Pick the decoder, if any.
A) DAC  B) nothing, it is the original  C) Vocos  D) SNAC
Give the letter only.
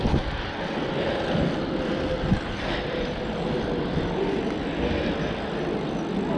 B